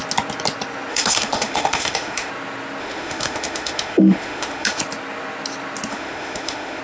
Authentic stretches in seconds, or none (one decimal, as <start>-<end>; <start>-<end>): 0.0-0.9; 2.3-2.8; 4.8-5.9